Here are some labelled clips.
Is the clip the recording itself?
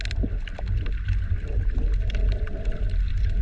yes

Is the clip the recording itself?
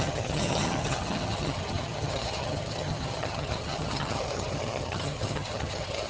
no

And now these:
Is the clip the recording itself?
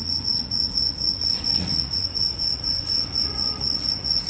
no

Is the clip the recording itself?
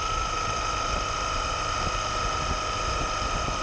yes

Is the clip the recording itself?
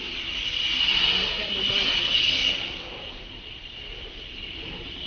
yes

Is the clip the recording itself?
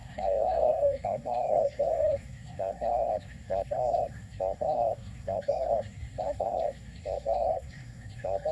no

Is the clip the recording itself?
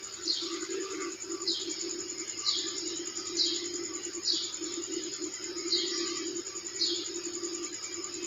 yes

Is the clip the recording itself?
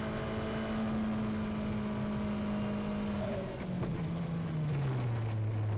yes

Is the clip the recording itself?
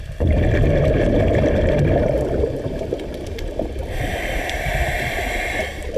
yes